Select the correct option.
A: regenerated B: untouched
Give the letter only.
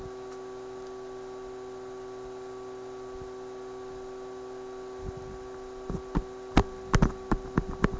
B